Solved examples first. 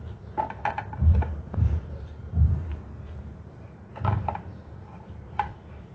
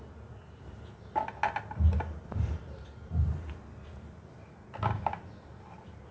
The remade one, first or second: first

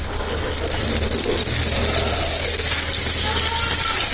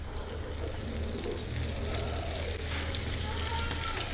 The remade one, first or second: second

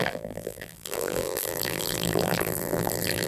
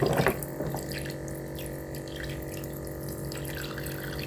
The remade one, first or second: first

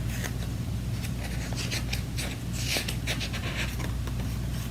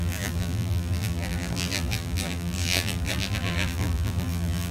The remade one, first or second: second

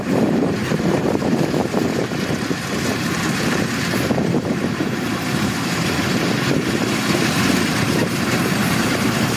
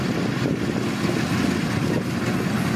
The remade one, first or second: first